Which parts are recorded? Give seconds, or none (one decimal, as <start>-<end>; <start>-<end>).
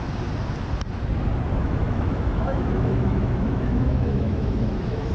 0.0-1.6